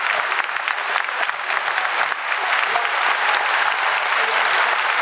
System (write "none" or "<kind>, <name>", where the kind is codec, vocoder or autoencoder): none